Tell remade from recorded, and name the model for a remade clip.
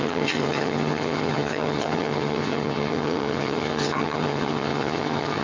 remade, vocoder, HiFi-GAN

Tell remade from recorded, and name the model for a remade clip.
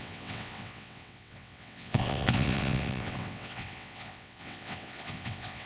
remade, vocoder, WaveNeXt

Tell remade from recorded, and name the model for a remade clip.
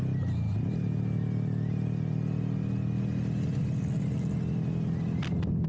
recorded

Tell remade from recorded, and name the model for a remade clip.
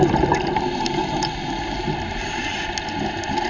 recorded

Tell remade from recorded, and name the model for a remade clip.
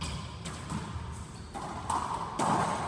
recorded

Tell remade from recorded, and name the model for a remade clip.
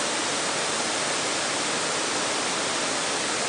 recorded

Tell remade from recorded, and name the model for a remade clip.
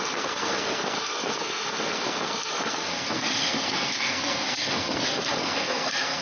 remade, codec, SNAC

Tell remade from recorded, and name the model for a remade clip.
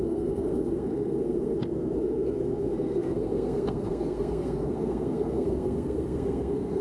remade, codec, SNAC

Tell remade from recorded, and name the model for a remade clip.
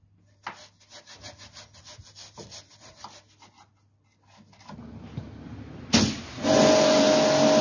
recorded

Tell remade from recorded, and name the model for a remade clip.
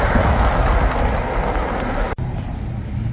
recorded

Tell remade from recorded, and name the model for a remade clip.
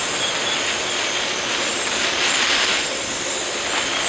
recorded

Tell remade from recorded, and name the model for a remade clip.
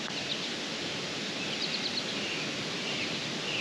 recorded